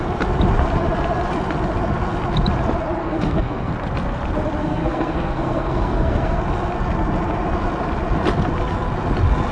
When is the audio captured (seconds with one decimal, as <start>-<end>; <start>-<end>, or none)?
0.0-3.0; 3.7-4.6; 6.4-9.5